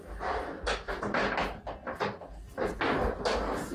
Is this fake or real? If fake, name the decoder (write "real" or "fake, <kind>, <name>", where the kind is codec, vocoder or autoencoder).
real